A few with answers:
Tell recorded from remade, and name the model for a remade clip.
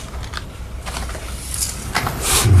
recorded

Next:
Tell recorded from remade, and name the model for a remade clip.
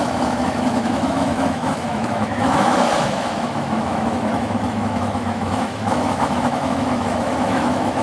remade, autoencoder, DAC-VAE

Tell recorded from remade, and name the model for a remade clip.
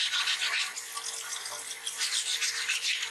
recorded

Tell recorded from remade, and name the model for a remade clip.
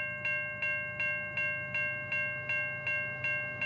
recorded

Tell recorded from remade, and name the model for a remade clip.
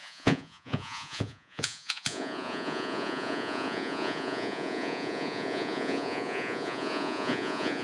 remade, vocoder, Vocos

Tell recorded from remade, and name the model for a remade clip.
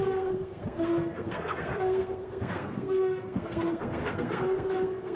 remade, codec, SNAC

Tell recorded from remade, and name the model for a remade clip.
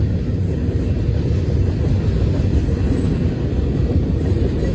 recorded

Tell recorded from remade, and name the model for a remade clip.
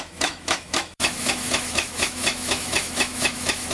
remade, autoencoder, DAC-VAE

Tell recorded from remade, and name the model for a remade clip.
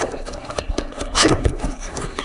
remade, codec, SNAC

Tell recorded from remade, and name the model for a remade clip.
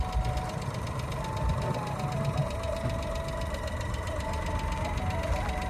recorded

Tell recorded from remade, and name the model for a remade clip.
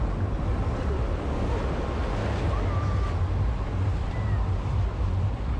recorded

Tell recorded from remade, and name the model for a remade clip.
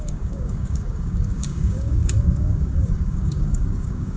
remade, codec, DAC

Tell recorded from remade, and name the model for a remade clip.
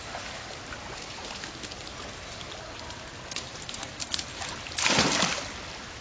recorded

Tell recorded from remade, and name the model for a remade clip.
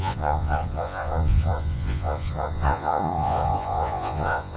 remade, vocoder, Vocos